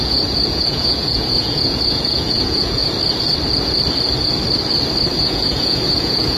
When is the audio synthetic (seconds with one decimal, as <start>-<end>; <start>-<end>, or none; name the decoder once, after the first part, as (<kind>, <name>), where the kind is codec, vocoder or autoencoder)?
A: 0.0-2.8 (vocoder, Vocos); 5.2-6.4